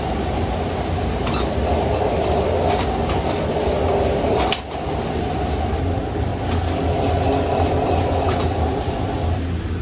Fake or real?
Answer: real